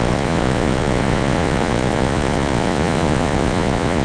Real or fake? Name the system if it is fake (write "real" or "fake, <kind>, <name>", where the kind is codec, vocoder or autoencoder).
fake, vocoder, Vocos